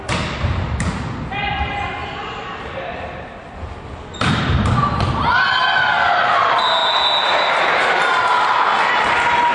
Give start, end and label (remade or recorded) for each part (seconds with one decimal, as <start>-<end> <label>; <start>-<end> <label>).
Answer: 0.0-9.5 recorded